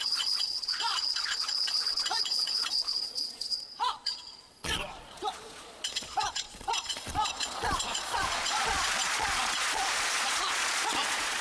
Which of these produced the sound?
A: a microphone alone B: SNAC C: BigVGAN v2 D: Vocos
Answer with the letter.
D